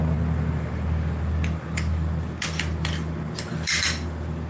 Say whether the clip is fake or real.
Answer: real